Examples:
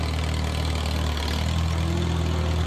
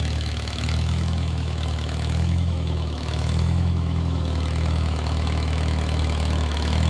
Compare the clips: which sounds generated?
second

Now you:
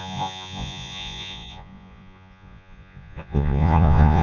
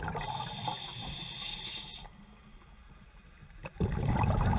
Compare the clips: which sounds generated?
first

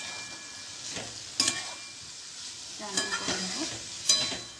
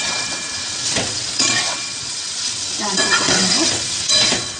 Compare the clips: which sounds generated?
second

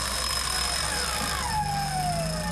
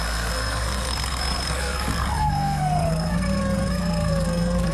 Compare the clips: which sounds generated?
second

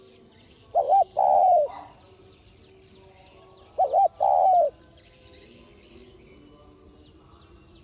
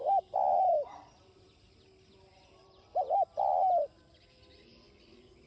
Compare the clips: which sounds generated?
second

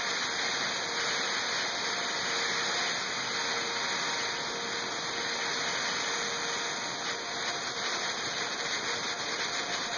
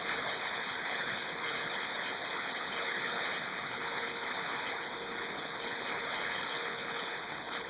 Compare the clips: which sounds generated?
second